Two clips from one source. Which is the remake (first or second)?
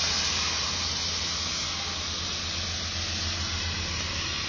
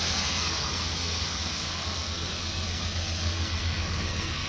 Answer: second